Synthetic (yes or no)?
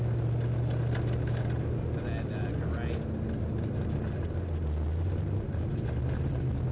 no